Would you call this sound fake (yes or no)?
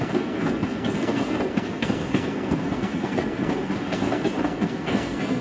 yes